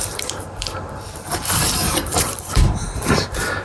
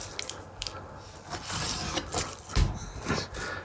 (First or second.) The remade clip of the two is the first